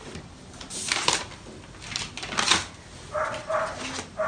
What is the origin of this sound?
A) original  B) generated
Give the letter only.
A